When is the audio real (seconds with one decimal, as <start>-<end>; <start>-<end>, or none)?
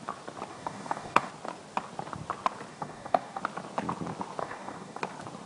0.0-0.5; 1.3-2.7; 3.4-4.4; 5.0-5.5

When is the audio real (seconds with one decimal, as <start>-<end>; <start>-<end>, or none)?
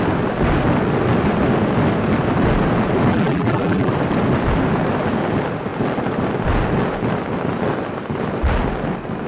0.0-3.1; 3.9-9.3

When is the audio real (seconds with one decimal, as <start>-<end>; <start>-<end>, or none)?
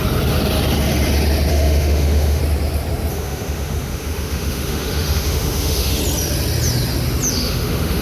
0.0-1.5; 2.4-3.1; 6.0-7.3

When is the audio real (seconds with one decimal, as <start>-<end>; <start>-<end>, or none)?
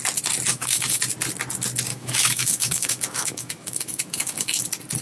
0.0-0.5; 1.0-1.9; 4.6-5.0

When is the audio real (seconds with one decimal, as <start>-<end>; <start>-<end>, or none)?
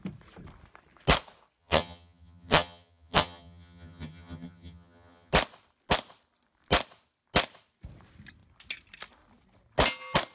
0.0-1.6; 5.3-10.3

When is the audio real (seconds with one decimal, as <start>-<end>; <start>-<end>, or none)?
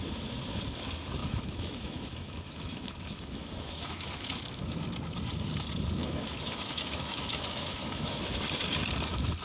0.0-1.2; 4.6-6.0; 8.2-9.4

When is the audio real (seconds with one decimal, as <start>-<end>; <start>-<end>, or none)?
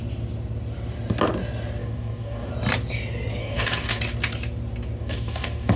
0.0-1.8; 2.5-3.4; 4.0-5.0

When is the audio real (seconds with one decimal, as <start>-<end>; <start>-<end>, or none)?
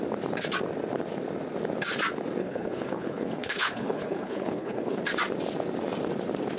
0.0-2.4; 5.0-6.6